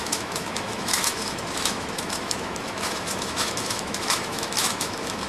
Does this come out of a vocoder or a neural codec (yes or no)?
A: yes